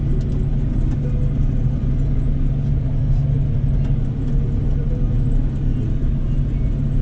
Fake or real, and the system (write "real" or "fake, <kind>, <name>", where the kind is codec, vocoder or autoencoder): real